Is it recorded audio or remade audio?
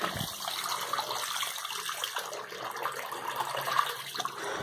recorded